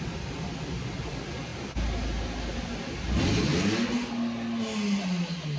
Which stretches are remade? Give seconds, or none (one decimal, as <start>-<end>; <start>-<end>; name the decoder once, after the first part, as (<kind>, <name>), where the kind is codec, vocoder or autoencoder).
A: none